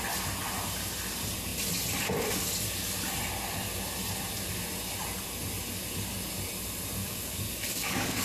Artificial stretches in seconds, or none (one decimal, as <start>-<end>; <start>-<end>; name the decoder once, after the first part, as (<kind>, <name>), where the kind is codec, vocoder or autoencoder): 7.0-8.2 (codec, DAC)